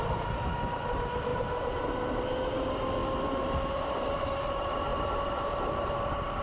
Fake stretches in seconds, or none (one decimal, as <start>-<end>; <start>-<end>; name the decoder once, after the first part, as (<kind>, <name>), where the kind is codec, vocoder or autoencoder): 1.3-1.9 (vocoder, BigVGAN v2)